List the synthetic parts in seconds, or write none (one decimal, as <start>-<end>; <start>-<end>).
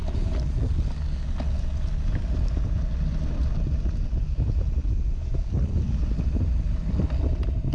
4.8-5.8